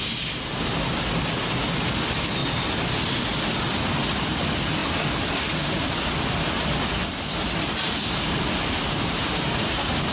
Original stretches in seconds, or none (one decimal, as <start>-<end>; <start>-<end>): 0.0-10.1